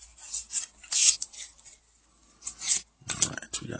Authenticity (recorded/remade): recorded